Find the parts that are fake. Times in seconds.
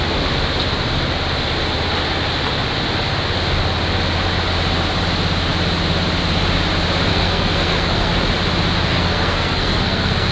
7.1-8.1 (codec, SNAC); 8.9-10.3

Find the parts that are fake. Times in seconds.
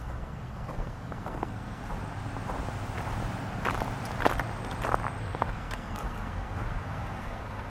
0.0-1.8 (codec, SNAC); 5.2-7.7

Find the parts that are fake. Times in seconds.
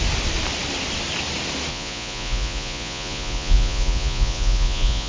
1.7-5.1 (vocoder, Vocos)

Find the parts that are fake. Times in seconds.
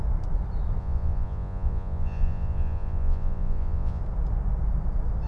0.8-4.0 (vocoder, Vocos)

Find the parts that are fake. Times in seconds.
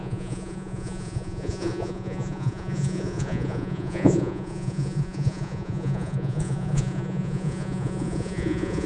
0.0-8.9 (vocoder, Vocos)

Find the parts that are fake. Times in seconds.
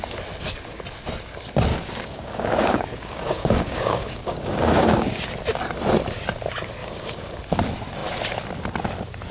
1.7-5.2 (codec, DAC); 6.8-7.4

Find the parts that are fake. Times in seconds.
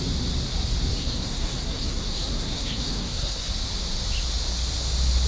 0.9-3.5 (codec, SNAC)